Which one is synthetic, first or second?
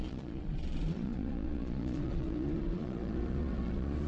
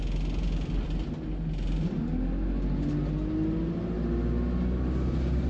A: first